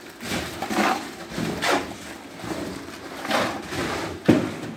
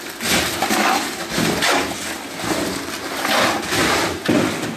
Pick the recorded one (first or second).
second